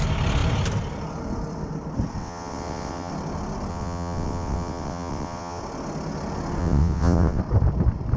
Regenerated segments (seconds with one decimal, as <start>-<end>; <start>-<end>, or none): 2.2-3.1; 3.7-5.6; 6.6-7.4